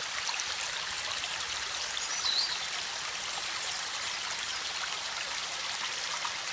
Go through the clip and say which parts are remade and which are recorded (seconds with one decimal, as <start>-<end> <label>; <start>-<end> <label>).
0.0-6.5 recorded